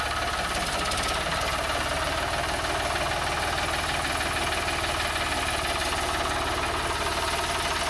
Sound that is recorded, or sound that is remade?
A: recorded